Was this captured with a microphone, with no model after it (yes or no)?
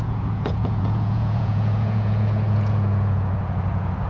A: no